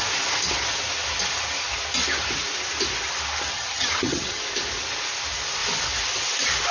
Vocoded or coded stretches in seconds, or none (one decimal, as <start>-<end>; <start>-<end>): 3.5-4.4